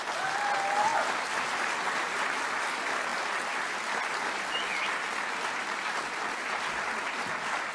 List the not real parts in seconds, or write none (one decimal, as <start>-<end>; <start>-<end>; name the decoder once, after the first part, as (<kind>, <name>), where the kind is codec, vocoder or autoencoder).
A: none